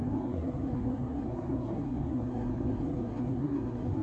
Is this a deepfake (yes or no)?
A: yes